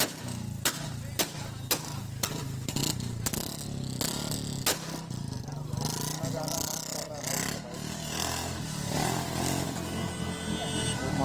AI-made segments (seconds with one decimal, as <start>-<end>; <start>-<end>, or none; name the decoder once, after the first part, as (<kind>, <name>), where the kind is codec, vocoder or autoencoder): none